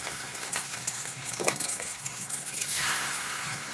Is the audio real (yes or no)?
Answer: no